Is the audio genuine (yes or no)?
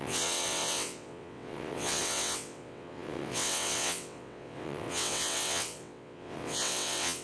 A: no